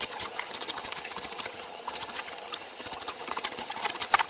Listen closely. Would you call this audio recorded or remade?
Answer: remade